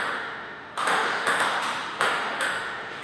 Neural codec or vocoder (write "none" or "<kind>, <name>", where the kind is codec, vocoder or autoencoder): autoencoder, DAC-VAE